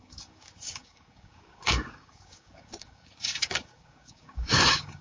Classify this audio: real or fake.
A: fake